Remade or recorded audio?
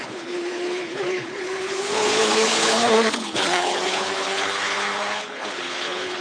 remade